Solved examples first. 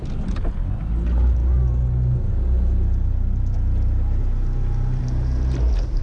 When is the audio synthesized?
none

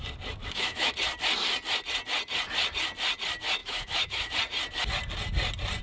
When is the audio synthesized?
0.4-0.9 (autoencoder, DAC-VAE); 3.6-4.3